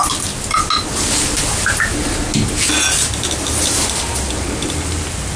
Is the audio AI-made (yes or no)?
no